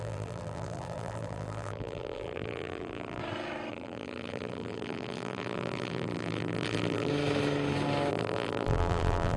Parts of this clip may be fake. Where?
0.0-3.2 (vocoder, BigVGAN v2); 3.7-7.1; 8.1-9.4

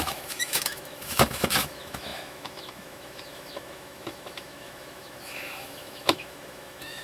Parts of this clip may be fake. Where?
0.0-7.0 (autoencoder, DAC-VAE)

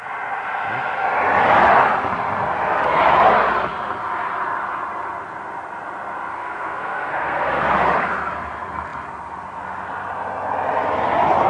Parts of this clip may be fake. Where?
6.3-7.5 (codec, SNAC)

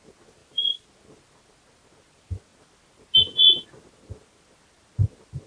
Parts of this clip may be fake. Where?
none

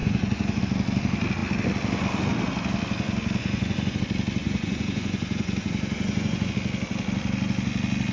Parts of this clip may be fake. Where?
0.0-0.6 (vocoder, Vocos); 3.4-4.0; 4.4-6.5

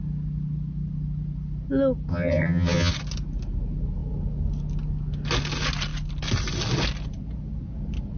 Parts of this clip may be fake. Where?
2.1-2.9 (vocoder, HiFi-GAN)

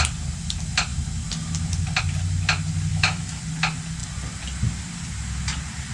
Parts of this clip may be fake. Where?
2.9-3.4 (autoencoder, DAC-VAE)

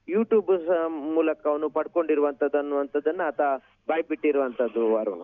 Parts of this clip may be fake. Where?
none